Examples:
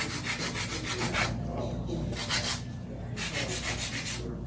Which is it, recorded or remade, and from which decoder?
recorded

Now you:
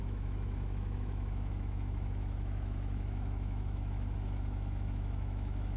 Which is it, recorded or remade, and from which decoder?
remade, autoencoder, DAC-VAE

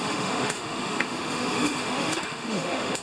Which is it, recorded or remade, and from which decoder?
remade, autoencoder, DAC-VAE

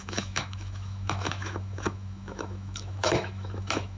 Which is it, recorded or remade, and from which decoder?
remade, autoencoder, DAC-VAE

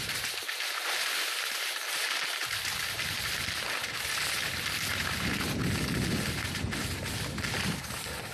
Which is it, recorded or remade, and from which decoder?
recorded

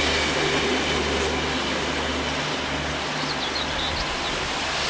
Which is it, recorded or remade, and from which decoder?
recorded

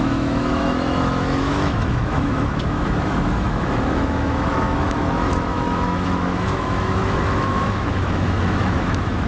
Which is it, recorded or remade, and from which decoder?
remade, autoencoder, DAC-VAE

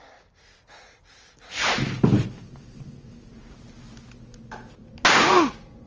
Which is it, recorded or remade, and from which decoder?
recorded